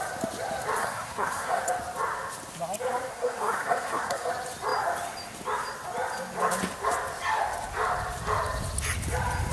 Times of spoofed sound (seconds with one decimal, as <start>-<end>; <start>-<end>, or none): 0.8-1.6; 3.1-4.3